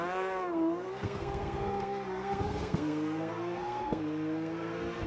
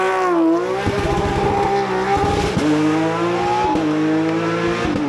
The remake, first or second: first